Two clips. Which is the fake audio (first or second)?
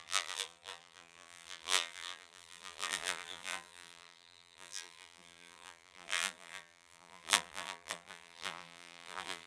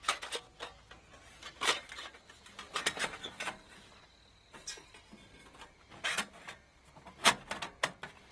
first